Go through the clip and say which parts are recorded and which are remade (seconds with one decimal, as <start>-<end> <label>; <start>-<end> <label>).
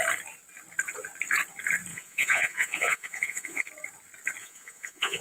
0.0-1.9 recorded; 1.9-3.7 remade; 3.7-4.4 recorded; 4.4-5.2 remade